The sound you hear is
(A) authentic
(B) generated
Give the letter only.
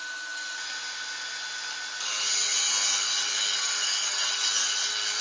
A